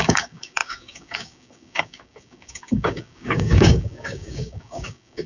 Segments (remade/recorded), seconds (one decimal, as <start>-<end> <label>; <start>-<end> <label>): 0.0-5.3 remade